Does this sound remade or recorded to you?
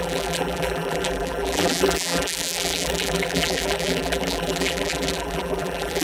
remade